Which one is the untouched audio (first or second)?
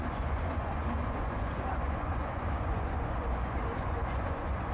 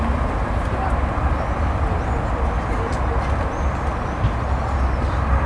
second